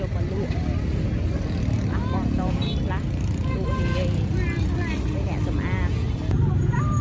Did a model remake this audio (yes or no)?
no